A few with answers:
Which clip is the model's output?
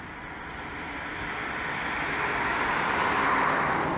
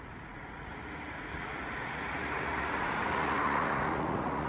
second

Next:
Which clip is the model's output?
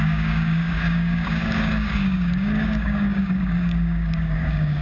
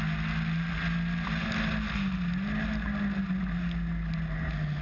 first